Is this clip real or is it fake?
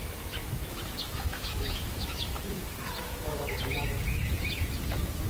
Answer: fake